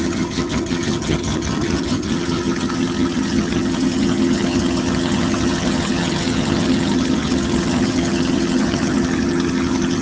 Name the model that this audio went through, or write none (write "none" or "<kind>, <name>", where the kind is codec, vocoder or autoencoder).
vocoder, HiFi-GAN